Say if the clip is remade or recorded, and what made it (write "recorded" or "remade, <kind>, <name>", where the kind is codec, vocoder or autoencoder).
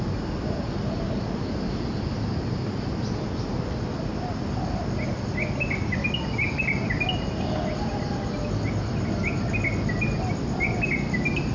recorded